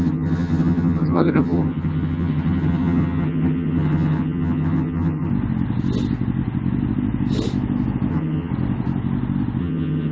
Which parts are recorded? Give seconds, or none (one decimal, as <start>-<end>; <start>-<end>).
5.3-8.1; 8.5-9.6